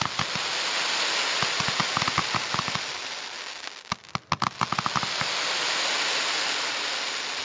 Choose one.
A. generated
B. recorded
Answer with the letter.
B